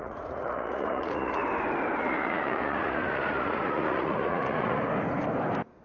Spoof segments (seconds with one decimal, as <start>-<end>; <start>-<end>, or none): 0.0-1.4; 2.0-4.8